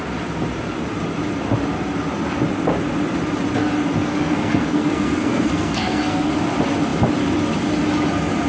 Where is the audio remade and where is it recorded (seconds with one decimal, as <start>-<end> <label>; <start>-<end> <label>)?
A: 0.0-4.1 recorded; 4.1-6.3 remade; 6.3-8.5 recorded